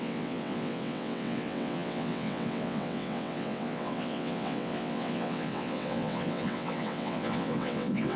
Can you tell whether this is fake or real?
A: fake